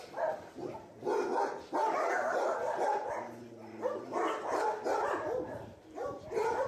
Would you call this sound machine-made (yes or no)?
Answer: no